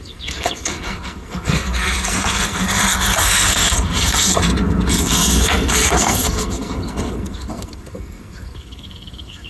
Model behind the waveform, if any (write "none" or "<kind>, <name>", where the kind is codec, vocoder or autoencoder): codec, SNAC